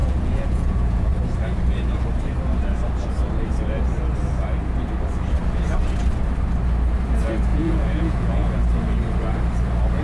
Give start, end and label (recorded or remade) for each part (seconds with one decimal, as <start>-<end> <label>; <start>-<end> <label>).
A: 0.0-1.1 remade; 1.1-7.5 recorded; 7.5-8.5 remade; 8.5-10.0 recorded